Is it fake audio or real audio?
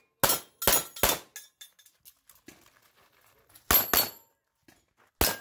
real